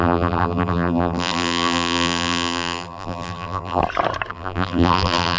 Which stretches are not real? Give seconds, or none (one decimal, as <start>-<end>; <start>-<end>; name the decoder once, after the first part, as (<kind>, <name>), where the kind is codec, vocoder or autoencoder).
0.0-3.8 (vocoder, BigVGAN v2); 4.3-5.4